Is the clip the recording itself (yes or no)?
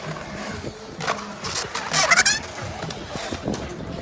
yes